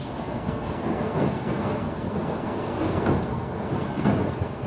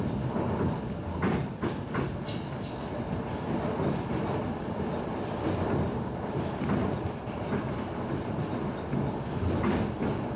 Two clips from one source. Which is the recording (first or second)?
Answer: second